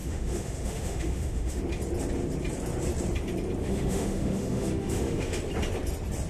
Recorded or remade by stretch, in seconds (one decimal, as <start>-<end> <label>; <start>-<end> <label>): 0.0-1.6 remade; 1.6-3.6 recorded; 3.6-5.4 remade; 5.4-6.3 recorded

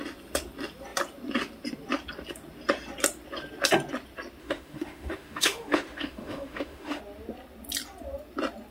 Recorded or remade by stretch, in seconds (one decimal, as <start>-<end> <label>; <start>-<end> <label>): 0.0-4.4 recorded; 4.4-7.0 remade; 7.0-8.7 recorded

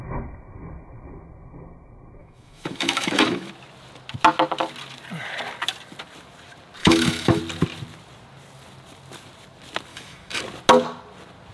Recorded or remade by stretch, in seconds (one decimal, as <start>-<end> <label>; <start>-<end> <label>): 0.0-2.2 recorded; 2.2-3.5 remade; 3.5-6.8 recorded; 6.8-7.4 remade; 7.4-9.9 recorded; 9.9-10.4 remade; 10.4-11.5 recorded